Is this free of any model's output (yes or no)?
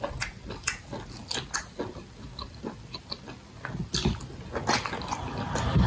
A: yes